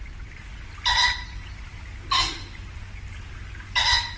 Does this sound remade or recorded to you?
recorded